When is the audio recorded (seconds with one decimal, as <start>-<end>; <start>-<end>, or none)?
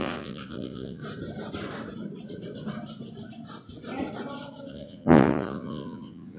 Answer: 1.0-4.7